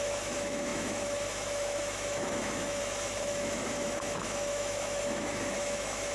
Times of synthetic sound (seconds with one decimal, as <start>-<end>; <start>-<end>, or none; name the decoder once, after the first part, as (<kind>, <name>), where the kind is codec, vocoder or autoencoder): 0.0-6.1 (autoencoder, DAC-VAE)